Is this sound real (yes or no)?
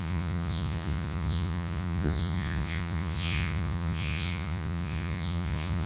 no